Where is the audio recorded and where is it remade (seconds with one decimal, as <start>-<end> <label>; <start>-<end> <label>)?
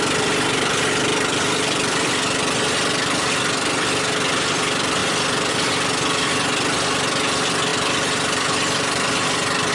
0.0-1.1 recorded; 1.1-2.2 remade; 2.2-5.0 recorded; 5.0-5.5 remade; 5.5-7.7 recorded; 7.7-9.7 remade